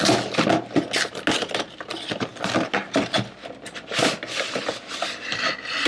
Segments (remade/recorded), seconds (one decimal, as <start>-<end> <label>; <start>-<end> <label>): 0.0-5.9 recorded